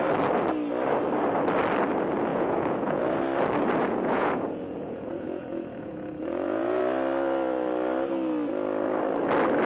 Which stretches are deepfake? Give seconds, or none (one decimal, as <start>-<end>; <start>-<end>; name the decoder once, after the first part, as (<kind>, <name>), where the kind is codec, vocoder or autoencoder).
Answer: 2.3-3.0 (vocoder, Vocos); 3.8-6.8